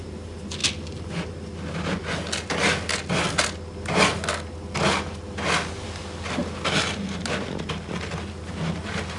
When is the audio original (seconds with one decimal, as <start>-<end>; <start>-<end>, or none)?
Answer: 0.0-9.2